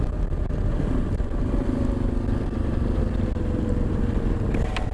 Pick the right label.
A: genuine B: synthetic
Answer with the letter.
A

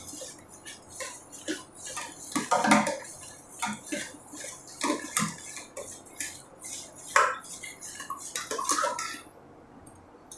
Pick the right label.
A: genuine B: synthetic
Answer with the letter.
A